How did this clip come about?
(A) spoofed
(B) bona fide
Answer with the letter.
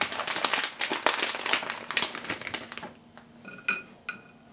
B